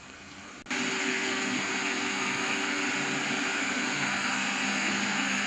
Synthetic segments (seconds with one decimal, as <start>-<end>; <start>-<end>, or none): 0.0-0.5; 1.0-2.8; 3.6-5.5